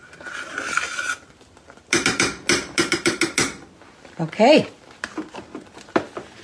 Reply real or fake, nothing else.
real